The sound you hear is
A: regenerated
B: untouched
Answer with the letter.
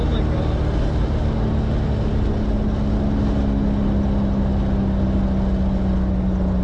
B